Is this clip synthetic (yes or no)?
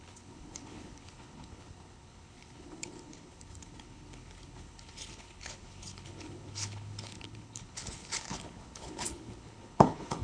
yes